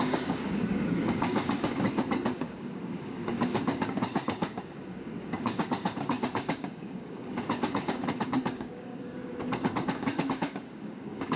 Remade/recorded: remade